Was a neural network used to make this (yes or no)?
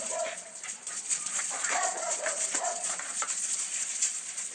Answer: yes